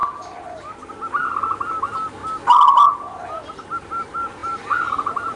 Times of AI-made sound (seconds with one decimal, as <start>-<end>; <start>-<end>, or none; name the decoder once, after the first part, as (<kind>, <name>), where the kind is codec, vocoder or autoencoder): 0.0-0.9 (vocoder, BigVGAN v2); 4.4-5.4